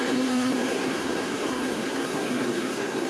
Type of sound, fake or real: fake